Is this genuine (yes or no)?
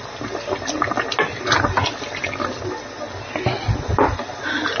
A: yes